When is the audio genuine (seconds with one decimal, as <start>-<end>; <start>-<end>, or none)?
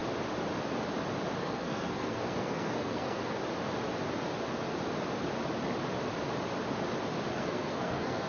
0.0-1.4; 3.4-7.3